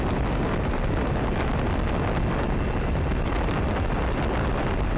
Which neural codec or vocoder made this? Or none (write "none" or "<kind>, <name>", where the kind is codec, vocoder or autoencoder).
none